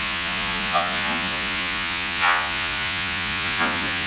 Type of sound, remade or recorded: remade